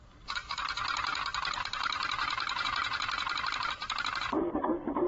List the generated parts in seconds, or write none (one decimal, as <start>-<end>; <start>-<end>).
0.0-5.1